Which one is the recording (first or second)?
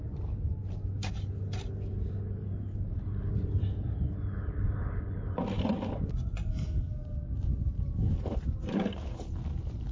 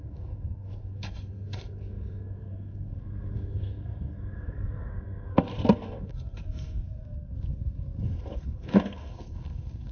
first